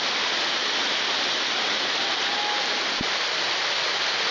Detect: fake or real real